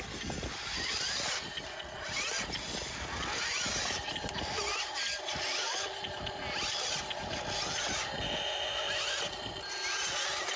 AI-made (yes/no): no